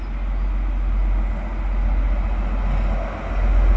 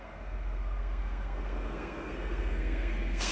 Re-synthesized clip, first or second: second